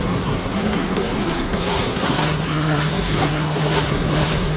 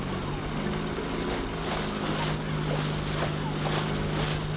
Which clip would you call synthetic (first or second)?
first